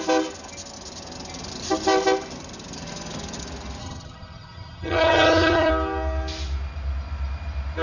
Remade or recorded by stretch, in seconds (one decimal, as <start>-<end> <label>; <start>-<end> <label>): 0.0-3.8 recorded; 3.8-5.7 remade; 5.7-7.8 recorded